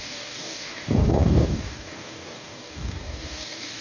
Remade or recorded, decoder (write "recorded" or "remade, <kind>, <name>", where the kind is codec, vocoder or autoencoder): remade, codec, DAC